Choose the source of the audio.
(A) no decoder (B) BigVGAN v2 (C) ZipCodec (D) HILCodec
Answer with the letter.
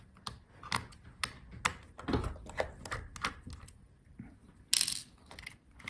A